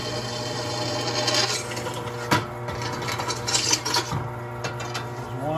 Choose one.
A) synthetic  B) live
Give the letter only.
B